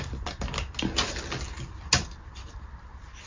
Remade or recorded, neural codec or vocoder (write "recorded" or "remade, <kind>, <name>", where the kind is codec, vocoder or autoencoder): recorded